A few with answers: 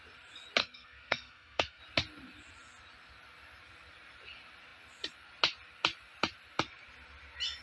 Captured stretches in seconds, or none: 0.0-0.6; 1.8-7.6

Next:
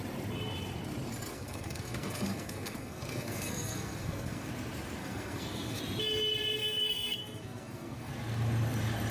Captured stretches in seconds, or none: 0.0-1.3; 4.5-5.0; 5.8-6.6; 8.1-9.1

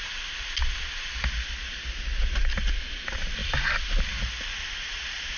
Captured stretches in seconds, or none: 0.0-5.4

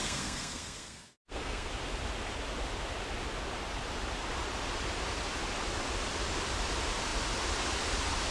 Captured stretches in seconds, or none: 1.7-8.3

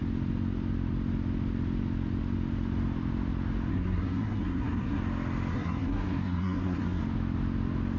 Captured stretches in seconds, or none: 0.0-3.7; 5.0-5.5; 7.0-8.0

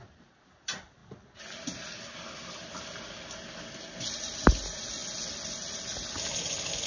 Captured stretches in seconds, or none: 0.0-6.9

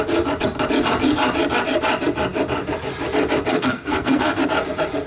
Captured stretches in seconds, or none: 0.0-3.5; 4.4-5.1